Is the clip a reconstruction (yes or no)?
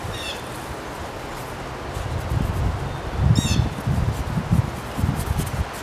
no